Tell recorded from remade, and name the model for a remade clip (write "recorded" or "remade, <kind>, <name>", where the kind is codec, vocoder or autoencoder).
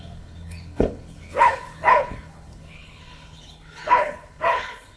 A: remade, codec, HILCodec